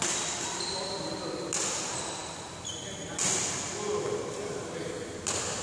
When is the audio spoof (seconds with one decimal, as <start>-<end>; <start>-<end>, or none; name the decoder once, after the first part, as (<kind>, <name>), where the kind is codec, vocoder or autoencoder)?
0.0-1.1 (vocoder, BigVGAN v2)